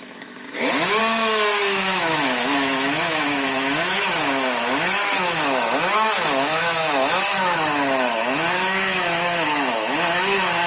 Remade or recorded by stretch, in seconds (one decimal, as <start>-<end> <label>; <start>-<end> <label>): 0.0-1.0 remade; 1.0-1.6 recorded; 1.6-10.7 remade